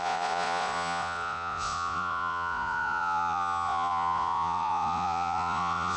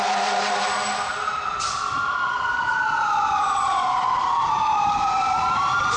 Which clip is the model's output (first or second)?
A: first